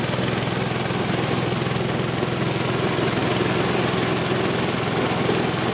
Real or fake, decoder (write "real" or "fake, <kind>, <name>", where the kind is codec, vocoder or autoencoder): real